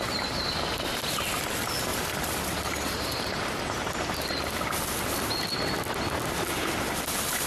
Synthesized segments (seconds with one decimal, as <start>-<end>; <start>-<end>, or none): 1.9-3.1